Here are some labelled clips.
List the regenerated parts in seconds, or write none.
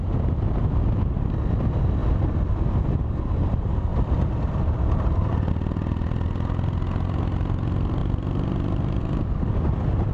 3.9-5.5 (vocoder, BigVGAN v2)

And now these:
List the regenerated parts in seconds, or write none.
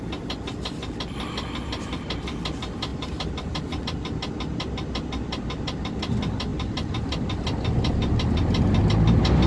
2.9-3.8 (vocoder, BigVGAN v2)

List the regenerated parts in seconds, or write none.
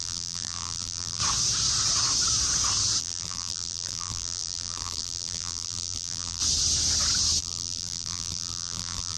0.0-1.2 (vocoder, BigVGAN v2); 3.0-6.4; 7.4-9.2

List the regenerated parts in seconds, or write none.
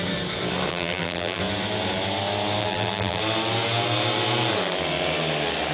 0.7-1.4 (vocoder, BigVGAN v2); 2.6-3.2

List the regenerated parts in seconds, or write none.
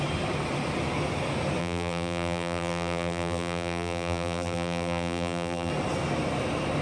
1.6-5.7 (vocoder, BigVGAN v2)